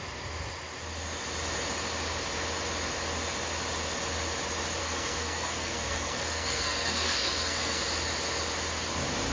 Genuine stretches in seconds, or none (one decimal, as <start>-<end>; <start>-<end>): 0.0-4.8; 7.8-9.3

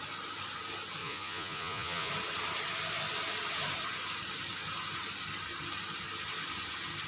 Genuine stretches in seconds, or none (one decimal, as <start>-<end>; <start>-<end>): 0.0-1.0; 2.1-7.1

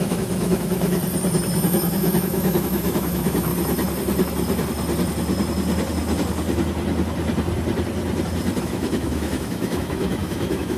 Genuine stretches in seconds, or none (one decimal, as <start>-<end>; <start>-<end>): 1.0-1.6; 3.5-8.6

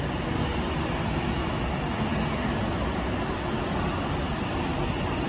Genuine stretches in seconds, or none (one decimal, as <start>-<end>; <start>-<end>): 0.0-5.3

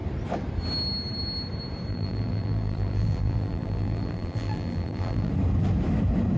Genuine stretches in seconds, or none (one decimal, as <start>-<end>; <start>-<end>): 0.0-1.9; 5.3-6.4

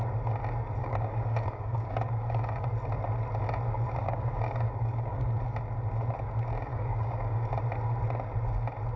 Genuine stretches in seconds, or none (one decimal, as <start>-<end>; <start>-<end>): 0.0-0.8; 2.7-4.0; 5.2-6.7; 7.5-9.0

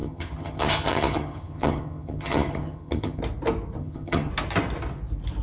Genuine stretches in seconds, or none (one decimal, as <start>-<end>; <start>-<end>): 3.2-3.8; 4.3-5.4